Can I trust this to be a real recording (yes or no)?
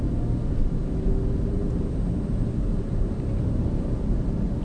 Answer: yes